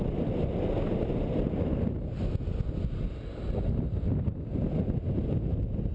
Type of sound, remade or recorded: recorded